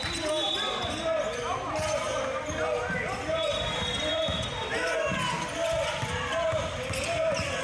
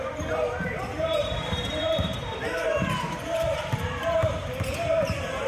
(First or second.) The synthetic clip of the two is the second